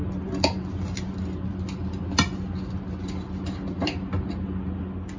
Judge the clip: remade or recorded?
recorded